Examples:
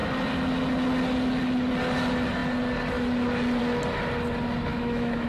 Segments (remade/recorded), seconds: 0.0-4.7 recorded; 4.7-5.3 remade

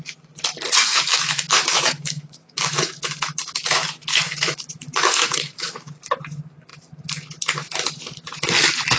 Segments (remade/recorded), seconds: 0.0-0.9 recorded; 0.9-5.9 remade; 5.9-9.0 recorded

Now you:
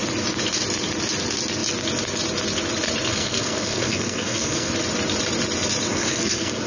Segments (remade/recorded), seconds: 0.0-3.1 recorded; 3.1-4.7 remade; 4.7-5.9 recorded; 5.9-6.7 remade